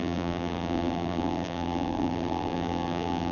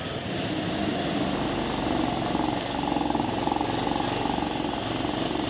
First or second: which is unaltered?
second